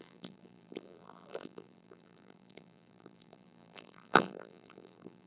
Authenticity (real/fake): fake